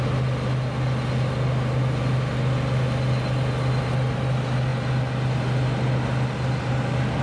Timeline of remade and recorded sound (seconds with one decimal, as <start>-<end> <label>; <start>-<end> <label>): 0.0-7.2 recorded